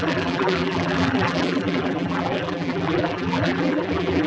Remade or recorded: remade